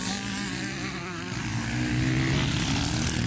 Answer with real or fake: real